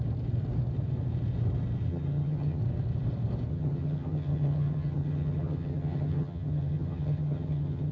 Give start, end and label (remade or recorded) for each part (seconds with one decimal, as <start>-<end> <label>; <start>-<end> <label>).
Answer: 0.0-1.9 recorded; 1.9-2.6 remade; 2.6-3.5 recorded; 3.5-7.9 remade